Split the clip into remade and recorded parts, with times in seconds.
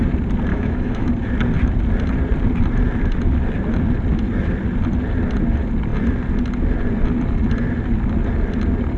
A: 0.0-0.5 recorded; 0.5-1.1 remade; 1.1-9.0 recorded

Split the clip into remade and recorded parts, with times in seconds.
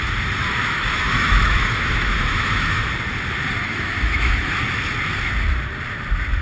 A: 0.0-0.6 recorded; 0.6-2.9 remade; 2.9-3.6 recorded; 3.6-4.5 remade; 4.5-6.4 recorded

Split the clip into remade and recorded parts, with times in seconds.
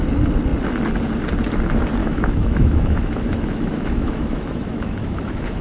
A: 0.0-2.0 recorded; 2.0-5.6 remade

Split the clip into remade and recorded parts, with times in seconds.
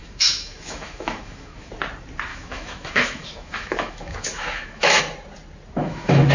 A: 0.0-1.7 remade; 1.7-2.3 recorded; 2.3-5.0 remade; 5.0-5.8 recorded; 5.8-6.3 remade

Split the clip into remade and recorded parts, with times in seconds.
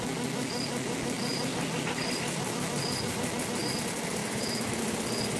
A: 0.0-4.2 recorded; 4.2-4.8 remade; 4.8-5.4 recorded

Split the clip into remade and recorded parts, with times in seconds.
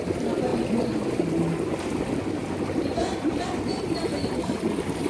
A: 0.0-5.1 recorded